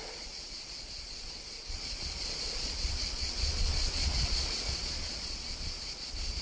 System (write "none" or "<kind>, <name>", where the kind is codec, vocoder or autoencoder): vocoder, Vocos